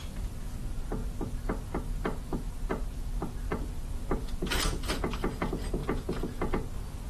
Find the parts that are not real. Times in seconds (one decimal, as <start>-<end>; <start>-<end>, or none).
none